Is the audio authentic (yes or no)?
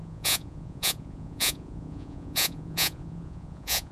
no